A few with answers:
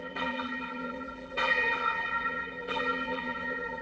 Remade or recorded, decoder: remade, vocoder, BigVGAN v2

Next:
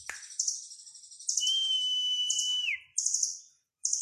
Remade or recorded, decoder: remade, vocoder, BigVGAN v2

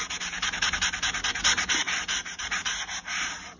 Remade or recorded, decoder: remade, vocoder, BigVGAN v2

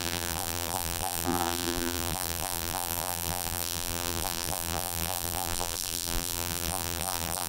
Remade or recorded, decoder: remade, vocoder, BigVGAN v2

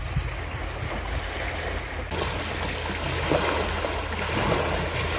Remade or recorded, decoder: recorded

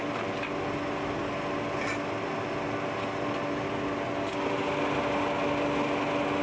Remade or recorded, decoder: recorded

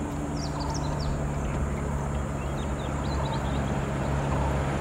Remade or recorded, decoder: recorded